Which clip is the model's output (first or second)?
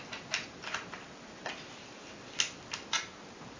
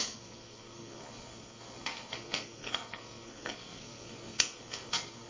second